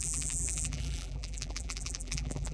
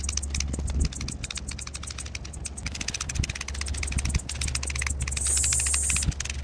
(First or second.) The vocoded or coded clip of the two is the first